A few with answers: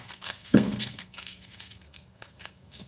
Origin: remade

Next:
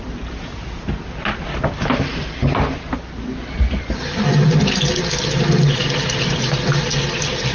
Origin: recorded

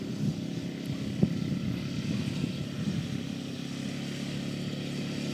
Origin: recorded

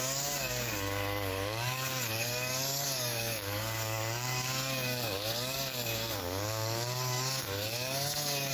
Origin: remade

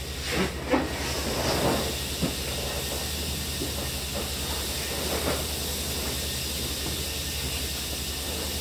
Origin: recorded